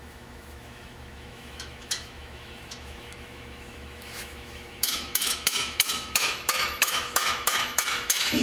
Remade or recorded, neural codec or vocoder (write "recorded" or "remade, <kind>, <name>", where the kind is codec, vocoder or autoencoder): remade, autoencoder, DAC-VAE